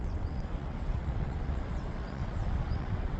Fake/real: fake